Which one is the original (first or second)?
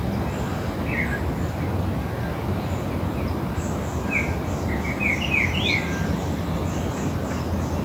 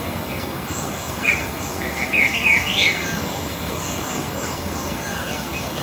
first